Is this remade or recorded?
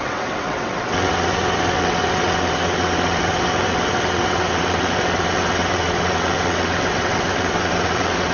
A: remade